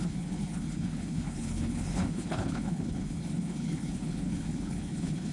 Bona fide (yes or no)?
no